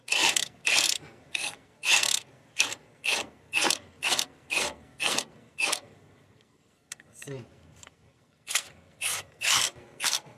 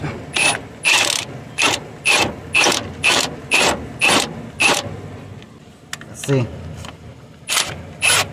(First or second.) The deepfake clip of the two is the first